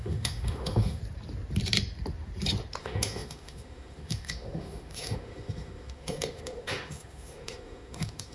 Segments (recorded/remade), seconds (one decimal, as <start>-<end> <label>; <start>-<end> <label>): 0.0-1.0 remade; 1.0-2.8 recorded; 2.8-8.3 remade